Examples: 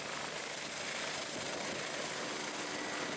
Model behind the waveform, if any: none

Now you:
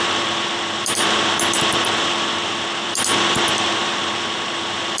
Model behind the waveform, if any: vocoder, BigVGAN v2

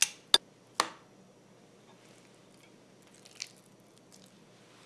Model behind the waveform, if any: none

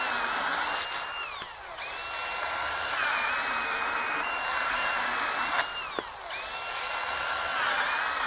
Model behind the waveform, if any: none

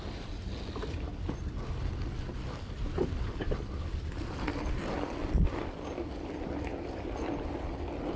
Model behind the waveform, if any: none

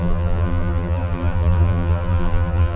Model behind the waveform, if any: vocoder, BigVGAN v2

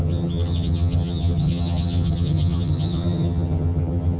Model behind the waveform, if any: vocoder, HiFi-GAN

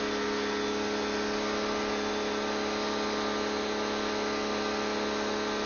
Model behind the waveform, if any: none